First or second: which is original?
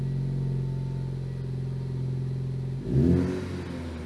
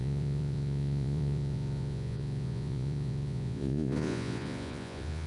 first